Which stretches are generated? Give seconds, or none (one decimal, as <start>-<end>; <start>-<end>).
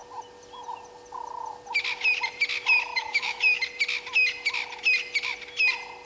2.9-3.6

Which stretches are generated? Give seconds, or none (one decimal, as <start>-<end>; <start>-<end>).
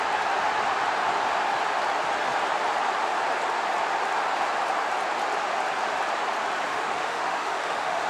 6.7-8.1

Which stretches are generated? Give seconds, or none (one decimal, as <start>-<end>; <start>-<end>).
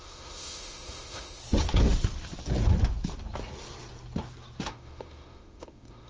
0.0-1.4; 4.7-6.1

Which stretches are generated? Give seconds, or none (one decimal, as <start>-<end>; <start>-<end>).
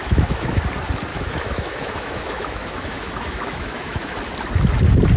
0.0-0.6; 1.1-4.2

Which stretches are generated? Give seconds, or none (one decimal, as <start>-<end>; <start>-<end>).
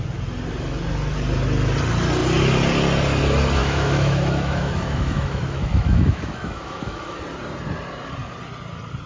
3.6-7.2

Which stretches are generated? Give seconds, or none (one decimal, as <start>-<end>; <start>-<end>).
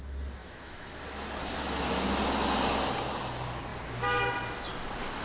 0.4-1.0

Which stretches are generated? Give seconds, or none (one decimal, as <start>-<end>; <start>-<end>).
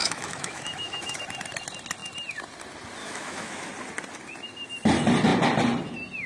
0.0-1.2; 3.0-3.7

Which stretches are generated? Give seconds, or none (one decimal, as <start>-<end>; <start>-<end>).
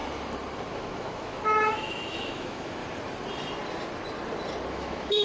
0.7-2.8; 4.7-5.2